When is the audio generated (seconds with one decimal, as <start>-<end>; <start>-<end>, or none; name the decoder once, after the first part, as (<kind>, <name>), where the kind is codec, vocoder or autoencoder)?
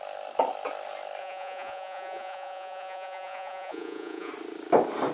1.2-4.3 (vocoder, Vocos)